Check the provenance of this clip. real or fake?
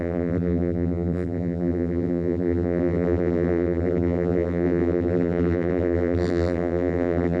fake